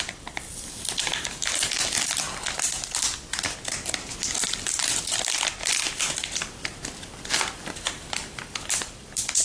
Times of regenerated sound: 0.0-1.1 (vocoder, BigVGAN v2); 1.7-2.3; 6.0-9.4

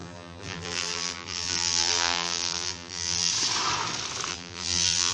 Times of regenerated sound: 0.0-3.3 (vocoder, BigVGAN v2); 4.3-5.1

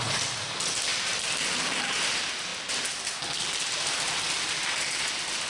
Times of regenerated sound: 0.9-1.9 (vocoder, BigVGAN v2)

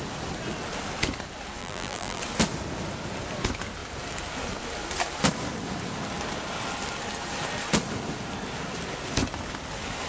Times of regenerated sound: 1.6-2.2 (vocoder, BigVGAN v2)

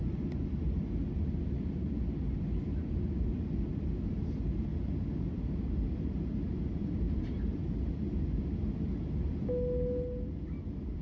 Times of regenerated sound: none

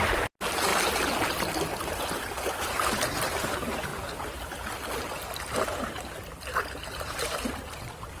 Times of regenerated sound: 0.0-0.7 (vocoder, BigVGAN v2); 2.6-3.9; 5.4-8.2

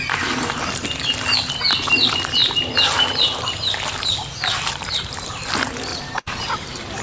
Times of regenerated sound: 2.4-5.4 (vocoder, BigVGAN v2); 5.9-7.0

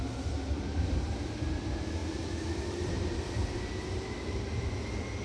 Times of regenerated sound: 2.0-3.8 (vocoder, BigVGAN v2)